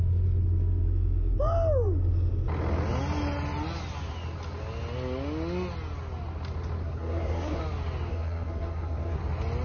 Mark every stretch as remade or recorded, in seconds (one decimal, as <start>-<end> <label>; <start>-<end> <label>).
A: 0.0-6.8 recorded; 6.8-7.6 remade; 7.6-8.1 recorded; 8.1-9.2 remade; 9.2-9.6 recorded